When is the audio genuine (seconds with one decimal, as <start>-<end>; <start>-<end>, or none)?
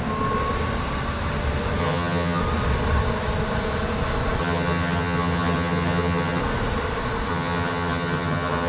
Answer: 0.0-1.8; 2.4-4.4; 6.4-7.3